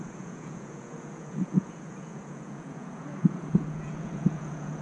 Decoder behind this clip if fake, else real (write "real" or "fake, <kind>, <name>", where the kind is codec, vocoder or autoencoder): fake, vocoder, Vocos